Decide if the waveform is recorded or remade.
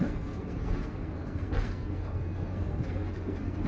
remade